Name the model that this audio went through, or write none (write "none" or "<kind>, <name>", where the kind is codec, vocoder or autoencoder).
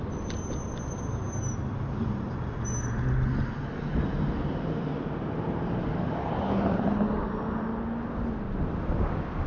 none